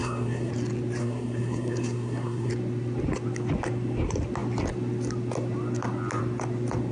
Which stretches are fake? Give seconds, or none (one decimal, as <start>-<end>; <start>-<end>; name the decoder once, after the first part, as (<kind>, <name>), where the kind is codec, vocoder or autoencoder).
0.0-0.5 (codec, SNAC); 1.0-2.5

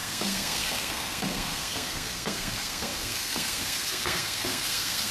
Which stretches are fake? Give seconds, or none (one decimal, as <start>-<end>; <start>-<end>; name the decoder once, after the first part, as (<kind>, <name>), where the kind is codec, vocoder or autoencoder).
0.0-5.1 (codec, SNAC)

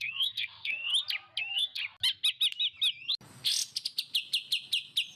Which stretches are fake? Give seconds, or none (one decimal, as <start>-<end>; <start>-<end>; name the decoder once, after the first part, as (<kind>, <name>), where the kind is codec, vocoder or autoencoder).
0.0-0.9 (codec, SNAC); 1.4-1.8

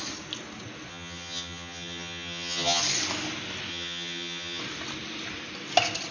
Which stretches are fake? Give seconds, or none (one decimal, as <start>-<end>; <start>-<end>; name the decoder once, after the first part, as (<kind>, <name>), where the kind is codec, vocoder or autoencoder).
0.9-2.8 (vocoder, HiFi-GAN); 3.7-4.6

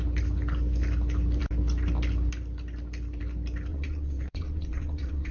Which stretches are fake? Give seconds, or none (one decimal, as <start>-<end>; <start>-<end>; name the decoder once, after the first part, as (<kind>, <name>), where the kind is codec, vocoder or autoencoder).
3.7-5.3 (vocoder, WaveNeXt)